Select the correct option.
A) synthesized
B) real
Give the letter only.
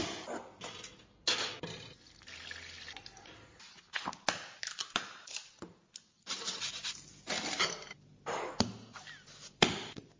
B